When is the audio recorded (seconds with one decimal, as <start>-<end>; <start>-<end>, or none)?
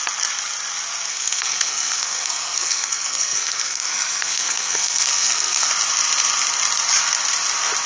0.0-1.1; 5.7-7.9